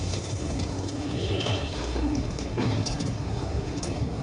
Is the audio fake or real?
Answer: fake